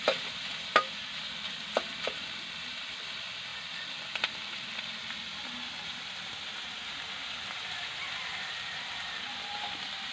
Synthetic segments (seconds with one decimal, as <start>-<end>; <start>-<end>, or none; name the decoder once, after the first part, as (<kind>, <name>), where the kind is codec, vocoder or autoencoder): none